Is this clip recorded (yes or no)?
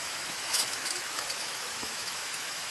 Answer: no